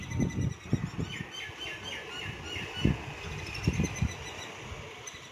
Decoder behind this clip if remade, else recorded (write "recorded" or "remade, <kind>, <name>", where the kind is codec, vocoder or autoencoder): recorded